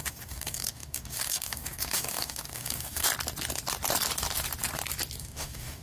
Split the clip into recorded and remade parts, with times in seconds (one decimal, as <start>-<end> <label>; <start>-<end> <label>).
0.0-3.1 remade; 3.1-5.2 recorded; 5.2-5.8 remade